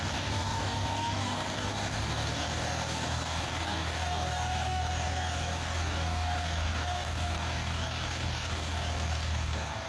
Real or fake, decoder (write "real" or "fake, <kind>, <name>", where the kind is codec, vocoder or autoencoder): fake, codec, DAC